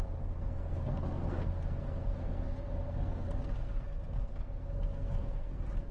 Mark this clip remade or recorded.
remade